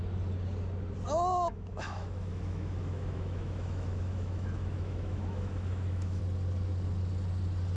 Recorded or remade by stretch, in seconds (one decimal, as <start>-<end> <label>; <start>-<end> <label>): 0.0-1.5 recorded; 1.5-6.2 remade; 6.2-7.8 recorded